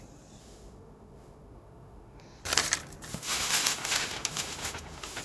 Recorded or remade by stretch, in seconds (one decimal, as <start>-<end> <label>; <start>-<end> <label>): 0.0-0.4 recorded; 0.4-2.4 remade; 2.4-3.1 recorded; 3.1-5.2 remade